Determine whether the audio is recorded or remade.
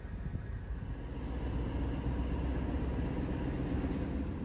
recorded